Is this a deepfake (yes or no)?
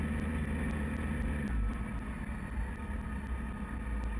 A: no